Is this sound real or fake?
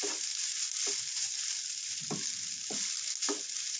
real